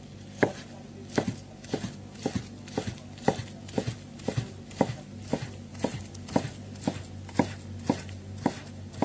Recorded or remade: recorded